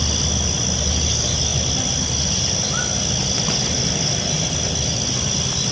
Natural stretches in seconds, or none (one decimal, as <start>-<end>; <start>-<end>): 0.0-5.7